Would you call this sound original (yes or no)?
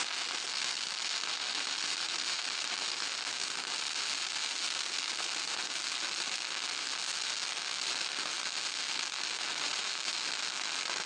yes